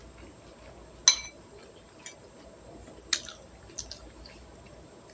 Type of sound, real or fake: real